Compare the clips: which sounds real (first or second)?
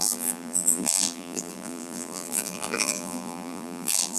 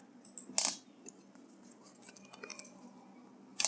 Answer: second